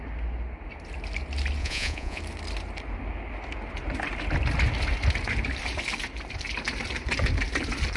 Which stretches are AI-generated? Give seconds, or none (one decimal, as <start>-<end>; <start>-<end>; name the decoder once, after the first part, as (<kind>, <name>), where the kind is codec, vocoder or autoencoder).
1.6-2.2 (vocoder, Vocos)